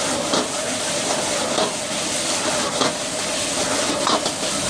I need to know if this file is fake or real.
real